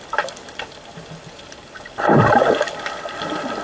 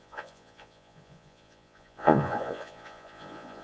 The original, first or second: first